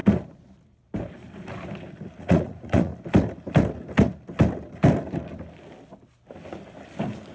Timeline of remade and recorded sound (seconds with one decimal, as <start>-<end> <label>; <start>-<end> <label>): 0.0-2.2 recorded; 2.2-2.9 remade; 2.9-7.3 recorded